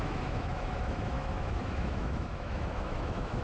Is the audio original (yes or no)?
no